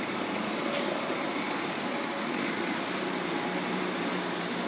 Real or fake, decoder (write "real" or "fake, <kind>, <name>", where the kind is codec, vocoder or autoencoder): real